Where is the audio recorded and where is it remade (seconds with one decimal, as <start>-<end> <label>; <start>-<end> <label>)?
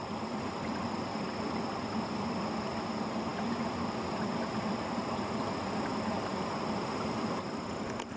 0.0-8.2 recorded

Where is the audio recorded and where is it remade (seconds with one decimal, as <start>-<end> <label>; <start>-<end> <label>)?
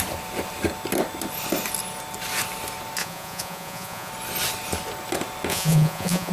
0.0-3.0 recorded; 3.0-4.1 remade; 4.1-5.5 recorded; 5.5-6.3 remade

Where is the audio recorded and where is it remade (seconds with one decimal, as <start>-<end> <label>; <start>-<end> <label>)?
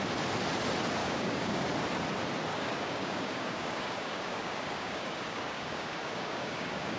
0.0-1.0 recorded; 1.0-1.7 remade; 1.7-2.5 recorded; 2.5-7.0 remade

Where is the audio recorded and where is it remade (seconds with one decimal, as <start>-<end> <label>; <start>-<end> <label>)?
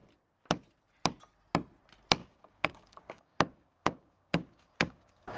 0.0-2.2 recorded; 2.2-5.4 remade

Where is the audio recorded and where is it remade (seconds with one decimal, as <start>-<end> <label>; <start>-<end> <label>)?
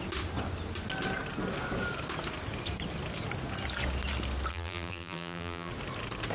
0.0-4.5 recorded; 4.5-5.7 remade; 5.7-6.3 recorded